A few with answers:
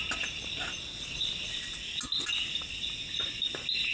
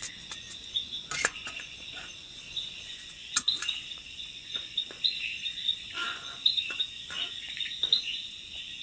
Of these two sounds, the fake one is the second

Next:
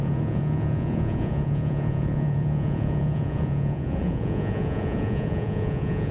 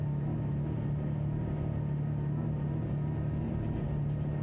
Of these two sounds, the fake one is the first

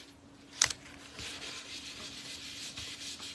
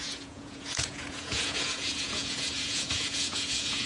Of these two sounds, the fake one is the second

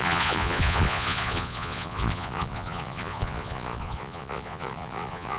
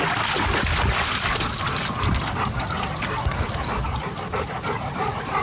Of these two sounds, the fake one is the first